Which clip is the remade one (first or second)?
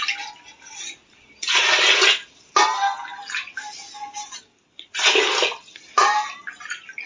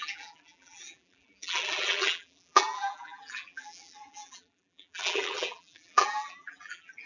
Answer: second